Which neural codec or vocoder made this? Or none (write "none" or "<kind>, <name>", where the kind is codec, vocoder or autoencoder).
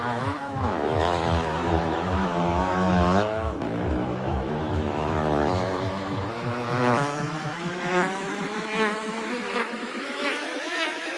autoencoder, DAC-VAE